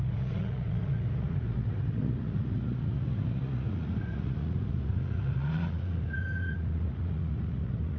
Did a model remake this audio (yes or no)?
yes